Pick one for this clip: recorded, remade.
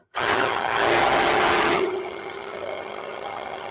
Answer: remade